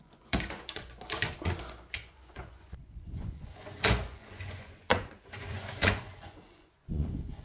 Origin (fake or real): fake